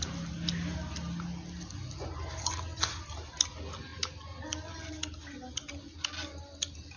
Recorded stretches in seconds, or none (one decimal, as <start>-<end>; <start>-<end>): 0.0-2.7; 3.3-7.0